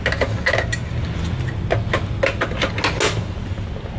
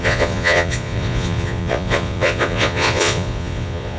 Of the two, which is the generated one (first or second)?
second